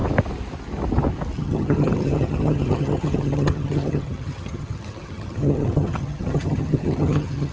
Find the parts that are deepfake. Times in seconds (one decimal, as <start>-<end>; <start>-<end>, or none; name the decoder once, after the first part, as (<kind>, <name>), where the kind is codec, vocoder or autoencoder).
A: 1.4-7.5 (vocoder, HiFi-GAN)